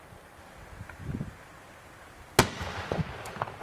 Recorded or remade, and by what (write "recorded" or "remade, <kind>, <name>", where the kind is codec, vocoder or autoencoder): recorded